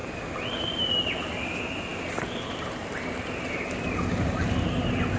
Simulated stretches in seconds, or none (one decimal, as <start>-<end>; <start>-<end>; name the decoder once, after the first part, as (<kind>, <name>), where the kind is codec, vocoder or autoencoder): none